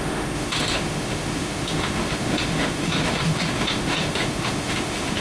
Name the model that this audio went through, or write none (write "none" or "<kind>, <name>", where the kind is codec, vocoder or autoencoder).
autoencoder, DAC-VAE